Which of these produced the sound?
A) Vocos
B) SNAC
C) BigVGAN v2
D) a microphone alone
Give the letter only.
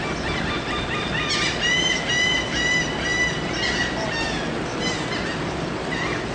D